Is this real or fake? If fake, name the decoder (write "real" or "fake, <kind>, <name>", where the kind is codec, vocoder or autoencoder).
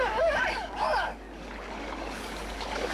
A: fake, codec, DAC